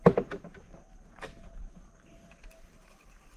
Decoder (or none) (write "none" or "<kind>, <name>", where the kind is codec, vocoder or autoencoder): vocoder, BigVGAN v2